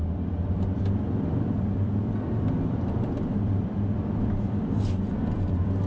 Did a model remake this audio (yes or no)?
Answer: yes